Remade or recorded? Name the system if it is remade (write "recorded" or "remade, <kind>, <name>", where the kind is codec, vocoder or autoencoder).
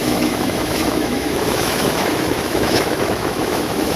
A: remade, autoencoder, DAC-VAE